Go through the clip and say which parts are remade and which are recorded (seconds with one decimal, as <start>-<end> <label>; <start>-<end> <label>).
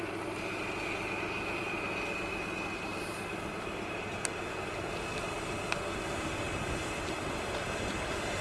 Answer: 0.0-8.4 recorded